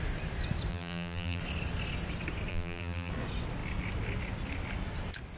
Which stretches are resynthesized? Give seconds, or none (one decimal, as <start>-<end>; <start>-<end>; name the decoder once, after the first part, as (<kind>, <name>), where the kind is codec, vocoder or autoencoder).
0.7-1.4 (vocoder, BigVGAN v2); 2.5-3.1